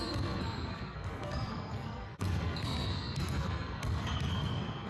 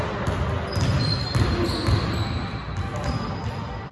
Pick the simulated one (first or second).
first